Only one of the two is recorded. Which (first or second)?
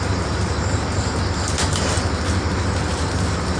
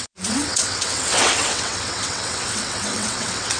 first